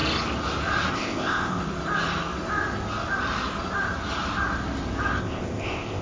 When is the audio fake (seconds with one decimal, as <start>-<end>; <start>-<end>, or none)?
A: 0.9-1.6; 5.2-6.0